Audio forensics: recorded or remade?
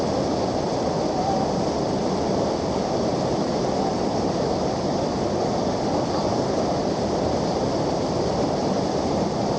recorded